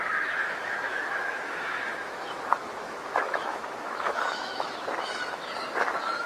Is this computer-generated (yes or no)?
yes